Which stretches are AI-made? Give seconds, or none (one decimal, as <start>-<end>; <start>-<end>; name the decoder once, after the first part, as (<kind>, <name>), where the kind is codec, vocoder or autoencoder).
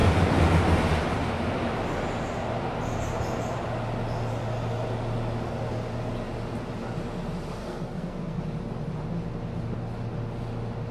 7.6-8.4 (codec, SNAC)